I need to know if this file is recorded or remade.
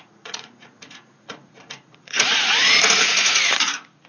remade